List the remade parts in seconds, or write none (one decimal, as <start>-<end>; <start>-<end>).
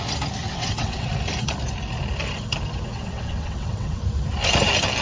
0.4-1.1; 2.9-4.0